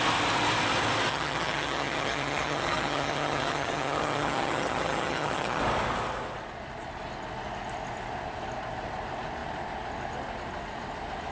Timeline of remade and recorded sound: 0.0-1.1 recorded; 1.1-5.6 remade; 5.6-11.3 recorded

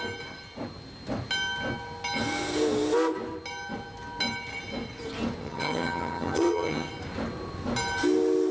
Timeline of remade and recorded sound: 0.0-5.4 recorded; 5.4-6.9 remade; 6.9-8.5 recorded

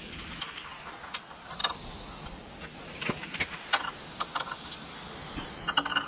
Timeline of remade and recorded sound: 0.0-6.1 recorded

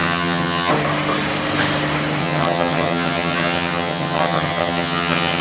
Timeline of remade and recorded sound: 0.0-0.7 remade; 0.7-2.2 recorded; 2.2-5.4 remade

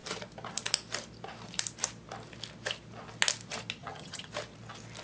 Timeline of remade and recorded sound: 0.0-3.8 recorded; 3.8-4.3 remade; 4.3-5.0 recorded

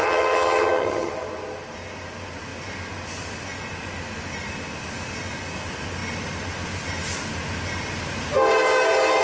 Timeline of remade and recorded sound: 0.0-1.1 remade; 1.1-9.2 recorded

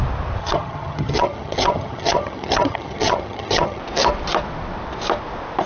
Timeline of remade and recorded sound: 0.0-0.4 recorded; 0.4-3.8 remade; 3.8-5.7 recorded

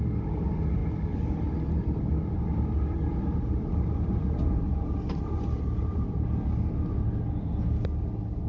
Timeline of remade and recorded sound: 0.0-8.5 recorded